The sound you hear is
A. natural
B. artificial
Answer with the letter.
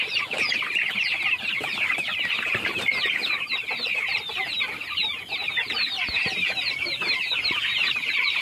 B